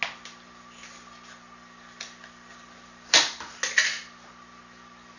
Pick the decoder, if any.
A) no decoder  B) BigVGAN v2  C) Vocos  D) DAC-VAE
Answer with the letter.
A